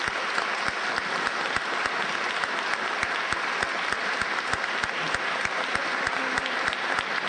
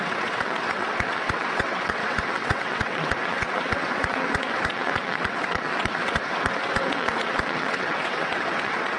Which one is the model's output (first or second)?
second